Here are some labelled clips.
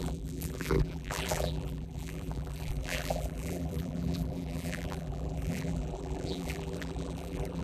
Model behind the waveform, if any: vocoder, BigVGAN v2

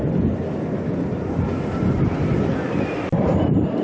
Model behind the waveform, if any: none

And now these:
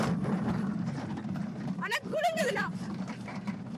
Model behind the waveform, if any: vocoder, BigVGAN v2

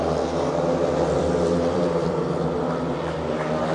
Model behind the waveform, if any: vocoder, BigVGAN v2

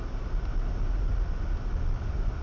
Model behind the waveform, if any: none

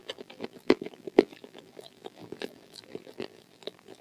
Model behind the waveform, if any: vocoder, BigVGAN v2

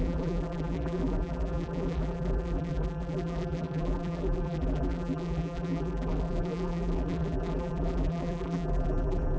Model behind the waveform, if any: vocoder, BigVGAN v2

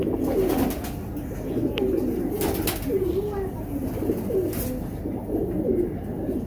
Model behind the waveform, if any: none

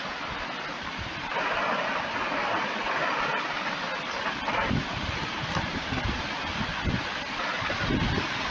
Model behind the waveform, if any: none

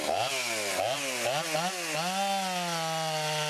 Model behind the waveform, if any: none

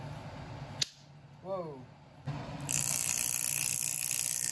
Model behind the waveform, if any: none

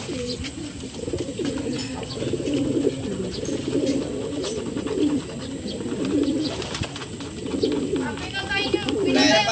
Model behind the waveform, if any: none